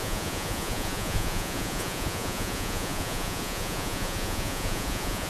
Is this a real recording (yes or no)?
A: no